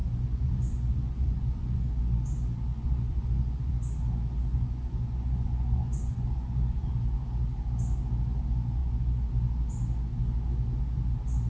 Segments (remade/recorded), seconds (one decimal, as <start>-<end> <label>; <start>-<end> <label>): 0.0-1.9 remade; 1.9-2.7 recorded; 2.7-3.7 remade; 3.7-4.5 recorded; 4.5-6.9 remade; 6.9-8.8 recorded; 8.8-9.3 remade; 9.3-11.5 recorded